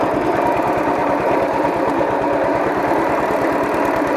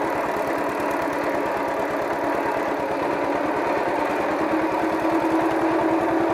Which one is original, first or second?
second